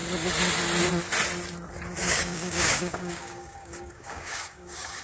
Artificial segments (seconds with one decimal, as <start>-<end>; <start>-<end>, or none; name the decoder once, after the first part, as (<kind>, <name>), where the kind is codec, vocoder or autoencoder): 2.0-5.0 (codec, DAC)